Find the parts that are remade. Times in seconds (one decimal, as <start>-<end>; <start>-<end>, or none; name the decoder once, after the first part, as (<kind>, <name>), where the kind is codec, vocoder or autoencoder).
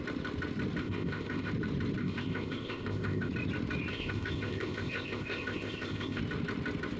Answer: 0.8-1.5 (codec, ZipCodec); 2.0-3.3; 3.9-6.2